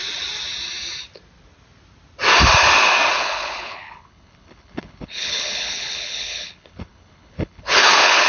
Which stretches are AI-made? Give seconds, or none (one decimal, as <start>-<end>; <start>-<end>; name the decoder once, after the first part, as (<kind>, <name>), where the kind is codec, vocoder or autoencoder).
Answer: 3.1-8.3 (codec, HILCodec)